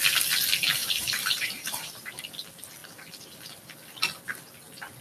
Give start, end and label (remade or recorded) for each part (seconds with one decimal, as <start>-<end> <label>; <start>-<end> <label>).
0.0-0.8 recorded; 0.8-2.2 remade; 2.2-5.0 recorded